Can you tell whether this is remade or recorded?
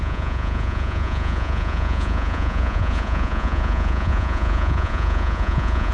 remade